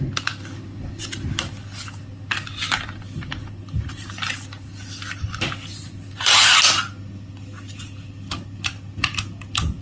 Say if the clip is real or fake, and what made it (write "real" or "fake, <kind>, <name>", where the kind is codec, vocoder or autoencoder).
real